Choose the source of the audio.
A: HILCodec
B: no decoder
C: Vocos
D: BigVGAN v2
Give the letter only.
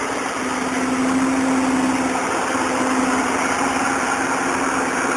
B